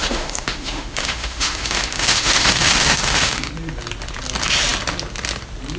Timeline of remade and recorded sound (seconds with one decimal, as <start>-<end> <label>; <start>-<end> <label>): 0.0-3.5 remade; 3.5-5.8 recorded